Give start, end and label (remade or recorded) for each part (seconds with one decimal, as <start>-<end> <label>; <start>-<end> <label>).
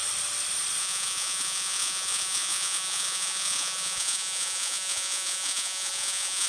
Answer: 0.0-0.8 recorded; 0.8-6.5 remade